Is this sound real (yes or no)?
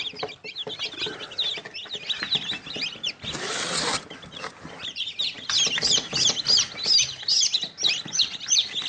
yes